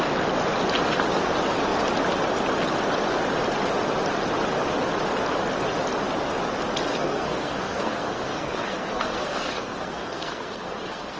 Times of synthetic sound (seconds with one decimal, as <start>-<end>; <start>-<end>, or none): 6.9-11.2